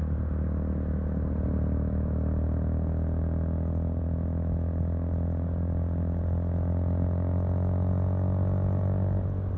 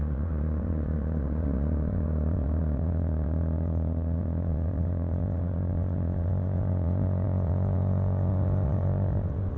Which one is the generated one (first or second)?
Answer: second